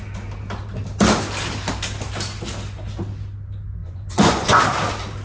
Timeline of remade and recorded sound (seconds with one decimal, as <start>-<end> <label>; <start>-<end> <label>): 0.0-3.8 recorded; 3.8-4.6 remade; 4.6-5.2 recorded